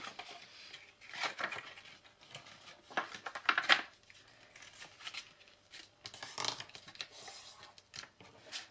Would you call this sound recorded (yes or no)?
yes